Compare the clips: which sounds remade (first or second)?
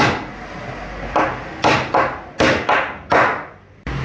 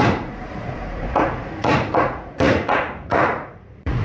second